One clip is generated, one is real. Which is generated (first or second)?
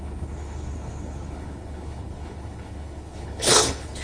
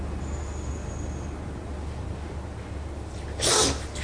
first